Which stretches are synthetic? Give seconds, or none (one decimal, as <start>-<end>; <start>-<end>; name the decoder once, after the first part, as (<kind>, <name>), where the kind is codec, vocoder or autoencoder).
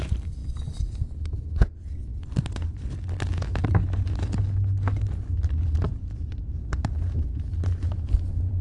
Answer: 0.0-0.4 (vocoder, BigVGAN v2); 5.5-8.6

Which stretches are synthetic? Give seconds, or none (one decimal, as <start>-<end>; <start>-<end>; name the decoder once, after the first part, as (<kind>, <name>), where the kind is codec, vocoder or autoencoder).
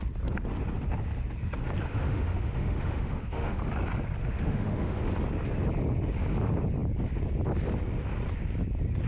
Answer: 1.9-3.6 (autoencoder, DAC-VAE); 4.2-5.0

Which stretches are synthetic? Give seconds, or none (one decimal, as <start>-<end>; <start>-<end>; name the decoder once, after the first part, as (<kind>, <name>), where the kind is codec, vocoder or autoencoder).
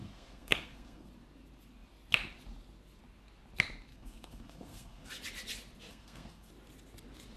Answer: 0.0-1.1 (codec, SNAC); 3.9-5.1; 5.9-6.5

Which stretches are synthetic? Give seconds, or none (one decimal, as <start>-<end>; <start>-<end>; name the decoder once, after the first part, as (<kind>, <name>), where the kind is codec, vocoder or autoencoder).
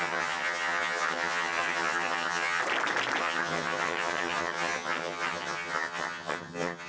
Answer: 0.0-2.6 (vocoder, HiFi-GAN); 3.2-6.9